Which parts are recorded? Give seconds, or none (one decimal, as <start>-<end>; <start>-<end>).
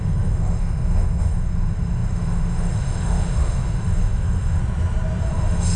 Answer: 4.6-5.2